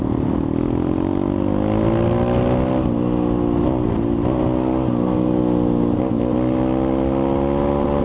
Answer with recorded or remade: recorded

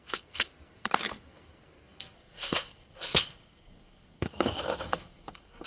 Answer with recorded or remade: remade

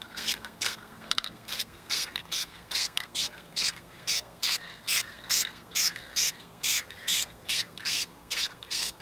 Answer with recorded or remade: remade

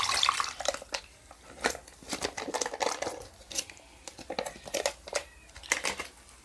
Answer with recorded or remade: recorded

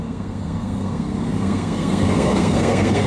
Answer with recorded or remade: remade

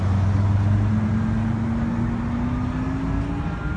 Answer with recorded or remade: recorded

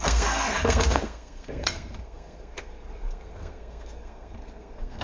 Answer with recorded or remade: remade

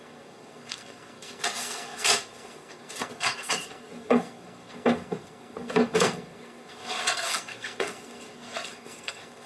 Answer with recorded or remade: remade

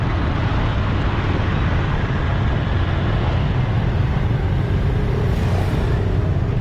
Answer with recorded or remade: recorded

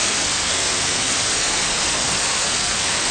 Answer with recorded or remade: remade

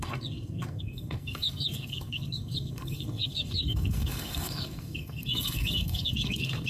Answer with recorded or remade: remade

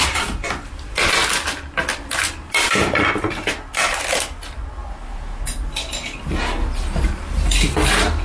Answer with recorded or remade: recorded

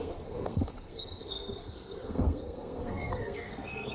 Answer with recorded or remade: remade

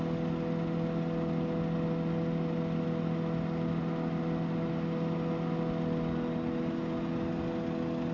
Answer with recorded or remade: recorded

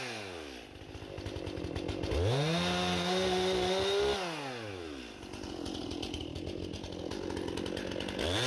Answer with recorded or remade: recorded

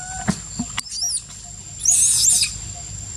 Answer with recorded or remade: recorded